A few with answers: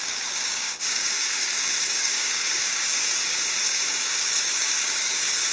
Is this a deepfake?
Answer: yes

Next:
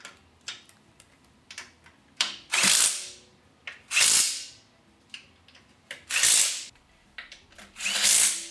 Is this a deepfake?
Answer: yes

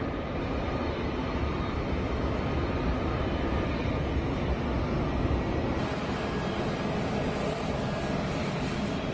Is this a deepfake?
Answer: no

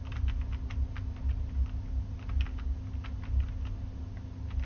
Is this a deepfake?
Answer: no